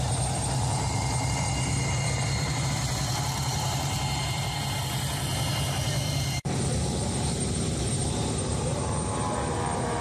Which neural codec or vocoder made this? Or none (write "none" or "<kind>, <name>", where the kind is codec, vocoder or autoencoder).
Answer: vocoder, BigVGAN v2